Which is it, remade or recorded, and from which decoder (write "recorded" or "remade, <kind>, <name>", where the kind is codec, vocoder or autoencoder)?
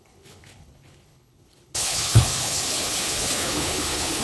remade, codec, HILCodec